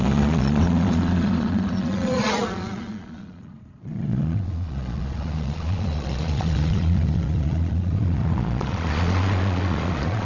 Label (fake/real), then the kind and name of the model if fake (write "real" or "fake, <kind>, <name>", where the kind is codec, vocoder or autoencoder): fake, vocoder, Vocos